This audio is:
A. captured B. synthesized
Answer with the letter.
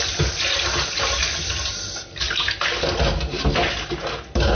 A